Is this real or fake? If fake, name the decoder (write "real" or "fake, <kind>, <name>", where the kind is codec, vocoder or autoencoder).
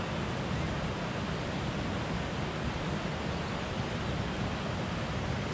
real